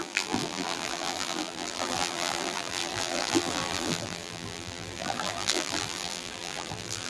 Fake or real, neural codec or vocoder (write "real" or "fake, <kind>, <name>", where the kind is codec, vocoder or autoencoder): fake, vocoder, BigVGAN v2